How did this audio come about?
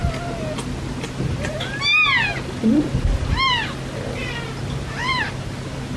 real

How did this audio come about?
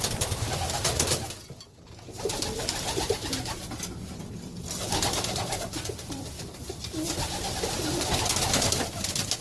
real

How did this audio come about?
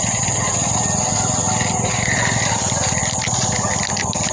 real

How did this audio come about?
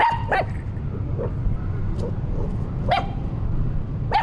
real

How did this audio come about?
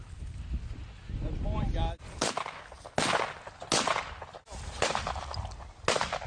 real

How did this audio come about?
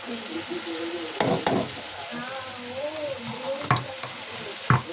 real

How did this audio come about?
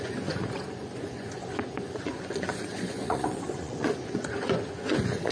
fake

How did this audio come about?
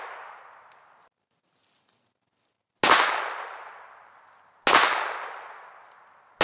real